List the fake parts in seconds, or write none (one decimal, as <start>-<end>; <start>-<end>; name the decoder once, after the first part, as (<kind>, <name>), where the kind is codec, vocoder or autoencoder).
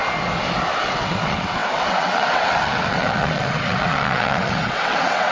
0.8-5.3 (vocoder, WaveNeXt)